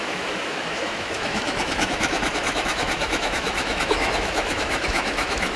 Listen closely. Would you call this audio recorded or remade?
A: remade